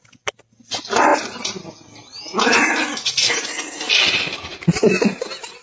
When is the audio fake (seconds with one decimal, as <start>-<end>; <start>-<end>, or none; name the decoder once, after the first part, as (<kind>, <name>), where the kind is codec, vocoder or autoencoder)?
4.5-5.1 (vocoder, BigVGAN v2)